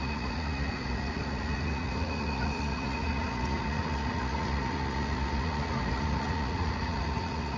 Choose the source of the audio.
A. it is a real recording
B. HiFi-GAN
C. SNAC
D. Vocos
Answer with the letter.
D